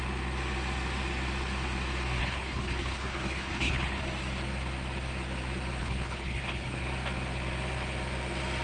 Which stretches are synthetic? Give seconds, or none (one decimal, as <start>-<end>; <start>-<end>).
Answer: 2.2-4.0; 5.8-6.8